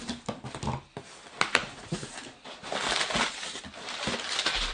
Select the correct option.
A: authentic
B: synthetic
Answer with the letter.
A